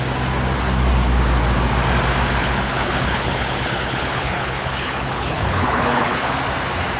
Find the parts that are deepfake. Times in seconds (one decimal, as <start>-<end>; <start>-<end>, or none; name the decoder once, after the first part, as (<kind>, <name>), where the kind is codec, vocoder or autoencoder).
2.4-6.4 (codec, HILCodec)

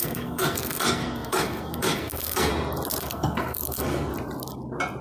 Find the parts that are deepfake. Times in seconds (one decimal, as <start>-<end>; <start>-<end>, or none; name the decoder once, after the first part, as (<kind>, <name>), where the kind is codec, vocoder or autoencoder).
0.0-2.5 (codec, SNAC); 3.0-4.1

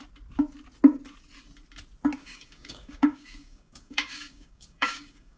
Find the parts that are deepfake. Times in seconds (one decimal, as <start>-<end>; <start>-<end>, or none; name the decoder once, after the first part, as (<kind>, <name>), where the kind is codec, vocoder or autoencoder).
2.2-5.4 (codec, DAC)

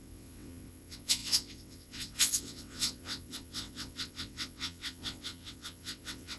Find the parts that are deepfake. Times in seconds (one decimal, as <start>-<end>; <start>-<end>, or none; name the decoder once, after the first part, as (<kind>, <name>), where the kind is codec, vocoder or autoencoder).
0.0-6.4 (vocoder, WaveNeXt)

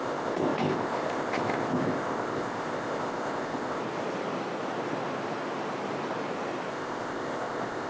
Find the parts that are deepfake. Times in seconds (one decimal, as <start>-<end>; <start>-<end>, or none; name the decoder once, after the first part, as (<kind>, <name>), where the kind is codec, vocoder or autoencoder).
0.0-3.8 (codec, ZipCodec); 6.7-7.9

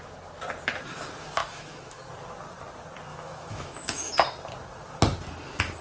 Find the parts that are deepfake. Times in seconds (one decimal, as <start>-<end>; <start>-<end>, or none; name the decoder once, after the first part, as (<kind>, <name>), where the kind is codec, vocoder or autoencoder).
1.4-2.1 (autoencoder, DAC-VAE); 3.1-4.1

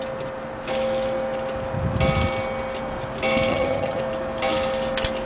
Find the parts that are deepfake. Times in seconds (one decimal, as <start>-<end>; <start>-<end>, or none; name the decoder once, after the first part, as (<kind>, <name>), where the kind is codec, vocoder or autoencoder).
3.5-4.0 (vocoder, HiFi-GAN)

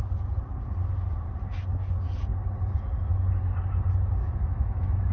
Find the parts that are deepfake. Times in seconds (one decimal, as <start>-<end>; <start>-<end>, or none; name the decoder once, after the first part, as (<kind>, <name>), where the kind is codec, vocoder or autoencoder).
4.2-5.1 (autoencoder, DAC-VAE)